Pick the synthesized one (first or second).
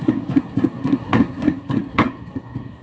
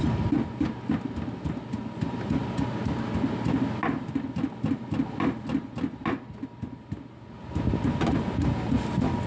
first